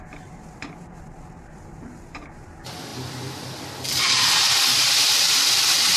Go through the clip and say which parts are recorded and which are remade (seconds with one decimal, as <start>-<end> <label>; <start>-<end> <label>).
0.0-6.0 remade